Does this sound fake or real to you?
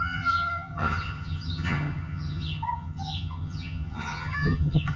fake